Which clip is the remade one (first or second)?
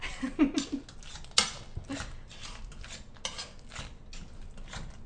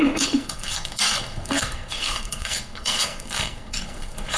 second